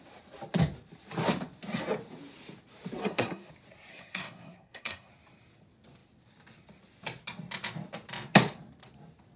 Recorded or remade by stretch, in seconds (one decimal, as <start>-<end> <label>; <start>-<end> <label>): 0.0-3.0 recorded; 3.0-3.5 remade; 3.5-3.9 recorded; 3.9-5.1 remade; 5.1-9.4 recorded